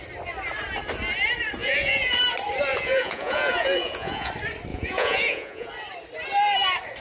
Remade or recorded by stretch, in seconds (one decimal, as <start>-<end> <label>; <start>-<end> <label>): 0.0-1.6 recorded; 1.6-2.2 remade; 2.2-2.7 recorded; 2.7-4.3 remade; 4.3-4.7 recorded; 4.7-5.7 remade; 5.7-7.0 recorded